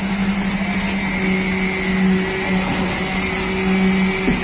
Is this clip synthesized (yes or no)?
no